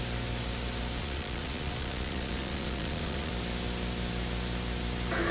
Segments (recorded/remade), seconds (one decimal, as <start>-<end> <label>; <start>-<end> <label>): 0.0-1.0 recorded; 1.0-3.3 remade; 3.3-5.3 recorded